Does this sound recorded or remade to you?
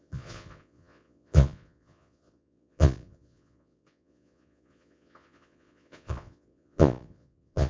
remade